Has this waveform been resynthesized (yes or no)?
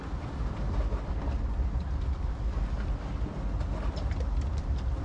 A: no